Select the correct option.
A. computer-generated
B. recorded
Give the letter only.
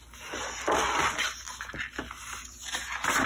B